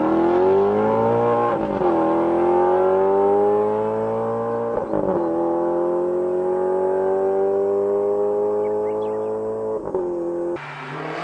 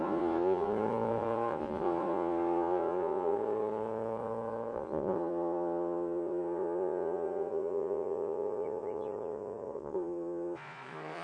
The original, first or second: first